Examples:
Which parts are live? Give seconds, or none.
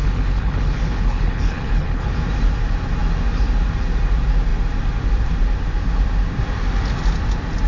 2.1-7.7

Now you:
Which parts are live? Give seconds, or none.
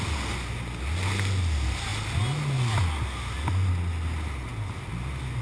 0.0-5.4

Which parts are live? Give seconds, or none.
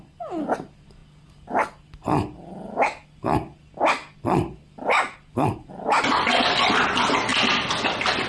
0.0-7.3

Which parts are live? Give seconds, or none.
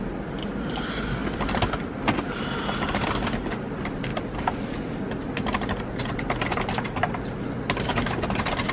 0.0-8.7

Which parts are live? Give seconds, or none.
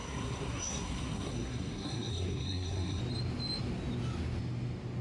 3.0-5.0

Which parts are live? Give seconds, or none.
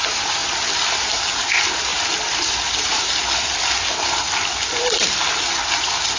0.0-6.2